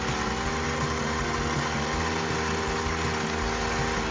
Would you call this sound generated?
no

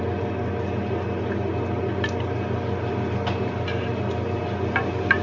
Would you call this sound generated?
no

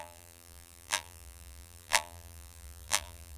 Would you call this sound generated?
yes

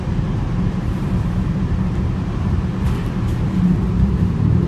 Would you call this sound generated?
yes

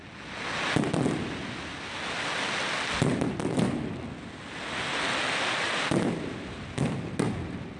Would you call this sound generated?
no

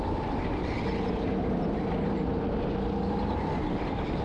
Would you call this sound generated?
yes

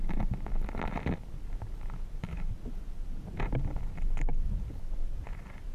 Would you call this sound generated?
no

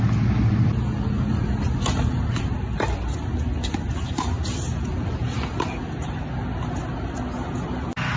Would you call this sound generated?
no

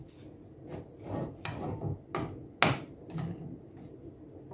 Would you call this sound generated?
no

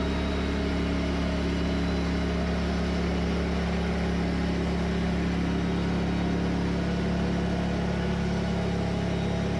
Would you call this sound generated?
no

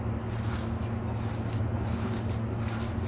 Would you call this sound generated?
no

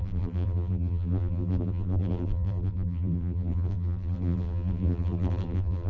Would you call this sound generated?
yes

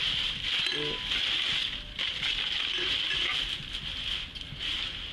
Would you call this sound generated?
no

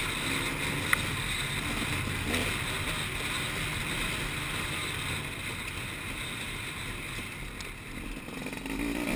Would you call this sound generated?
no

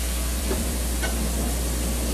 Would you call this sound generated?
yes